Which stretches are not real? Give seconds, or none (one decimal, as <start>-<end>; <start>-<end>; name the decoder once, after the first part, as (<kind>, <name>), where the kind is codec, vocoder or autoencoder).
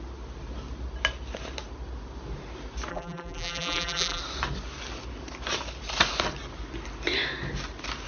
2.9-4.2 (vocoder, BigVGAN v2)